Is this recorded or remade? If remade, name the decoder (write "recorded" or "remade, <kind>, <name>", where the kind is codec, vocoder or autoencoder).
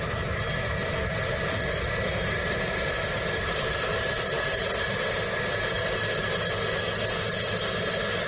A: recorded